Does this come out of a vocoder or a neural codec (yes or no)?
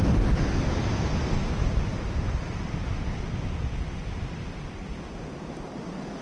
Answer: no